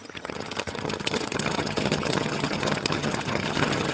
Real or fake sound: fake